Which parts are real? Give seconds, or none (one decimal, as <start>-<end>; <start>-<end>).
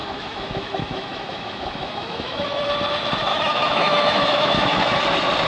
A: 2.6-3.3; 5.0-5.5